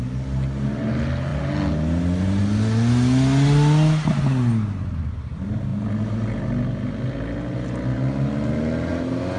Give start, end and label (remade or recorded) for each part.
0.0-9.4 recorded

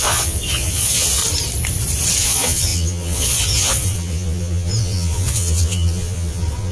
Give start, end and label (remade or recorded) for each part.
0.0-1.2 remade; 1.2-2.2 recorded; 2.2-6.7 remade